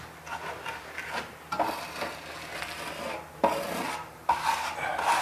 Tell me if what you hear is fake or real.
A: real